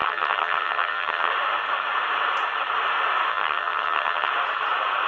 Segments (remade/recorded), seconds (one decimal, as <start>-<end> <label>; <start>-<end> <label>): 0.0-1.3 remade; 1.3-3.3 recorded; 3.3-4.3 remade; 4.3-5.1 recorded